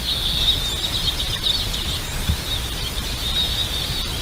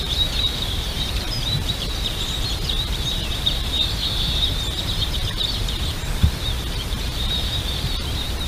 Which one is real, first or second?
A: first